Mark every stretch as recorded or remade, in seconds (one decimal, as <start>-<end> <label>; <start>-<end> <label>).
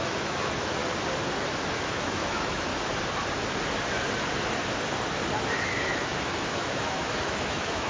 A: 0.0-0.8 remade; 0.8-1.7 recorded; 1.7-2.7 remade; 2.7-5.6 recorded; 5.6-7.9 remade